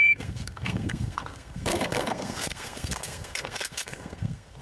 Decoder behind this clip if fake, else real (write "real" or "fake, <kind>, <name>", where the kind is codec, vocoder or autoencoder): fake, codec, SNAC